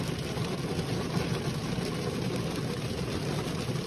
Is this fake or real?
real